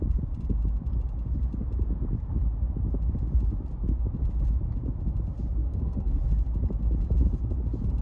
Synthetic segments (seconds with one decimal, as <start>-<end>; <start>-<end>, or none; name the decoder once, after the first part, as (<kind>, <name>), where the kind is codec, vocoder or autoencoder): 5.6-6.2 (codec, SNAC)